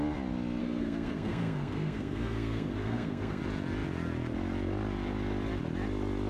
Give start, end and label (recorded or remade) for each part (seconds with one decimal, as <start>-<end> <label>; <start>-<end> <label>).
0.0-0.6 recorded; 0.6-3.4 remade; 3.4-6.3 recorded